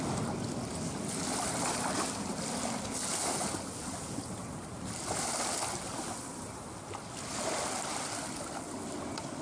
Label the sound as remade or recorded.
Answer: recorded